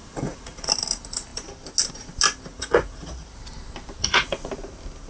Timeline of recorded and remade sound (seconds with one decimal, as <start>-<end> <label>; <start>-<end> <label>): 0.0-0.7 remade; 0.7-2.5 recorded; 2.5-3.1 remade; 3.1-4.0 recorded; 4.0-4.5 remade; 4.5-5.1 recorded